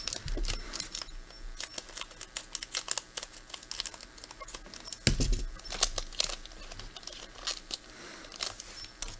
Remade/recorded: recorded